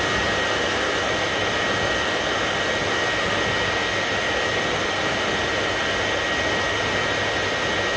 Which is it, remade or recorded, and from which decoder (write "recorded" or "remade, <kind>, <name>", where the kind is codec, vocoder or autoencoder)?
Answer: recorded